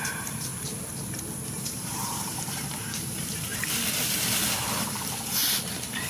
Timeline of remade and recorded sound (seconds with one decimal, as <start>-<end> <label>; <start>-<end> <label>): 0.0-0.5 remade; 0.5-1.1 recorded; 1.1-3.5 remade; 3.5-4.7 recorded; 4.7-5.4 remade; 5.4-6.1 recorded